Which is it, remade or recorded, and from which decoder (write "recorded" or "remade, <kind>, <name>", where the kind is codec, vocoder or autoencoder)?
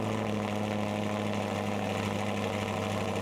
recorded